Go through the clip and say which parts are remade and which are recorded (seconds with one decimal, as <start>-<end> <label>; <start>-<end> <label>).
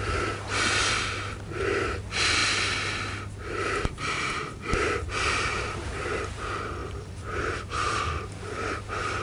0.0-6.8 recorded; 6.8-8.0 remade; 8.0-9.2 recorded